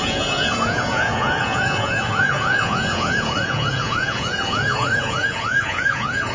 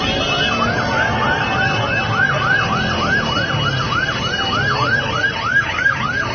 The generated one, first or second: first